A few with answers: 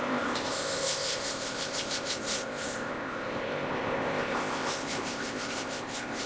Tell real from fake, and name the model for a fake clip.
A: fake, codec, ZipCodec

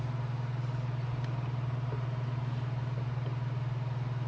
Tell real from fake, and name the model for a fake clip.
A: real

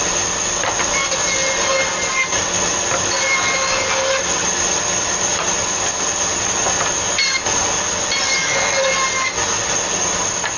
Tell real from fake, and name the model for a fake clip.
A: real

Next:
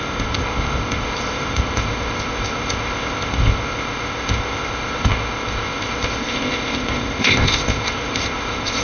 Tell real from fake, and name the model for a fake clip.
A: fake, codec, ZipCodec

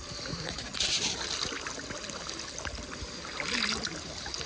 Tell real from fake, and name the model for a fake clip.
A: real